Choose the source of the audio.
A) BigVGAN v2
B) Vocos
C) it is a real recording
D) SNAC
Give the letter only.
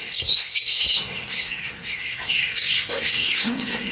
D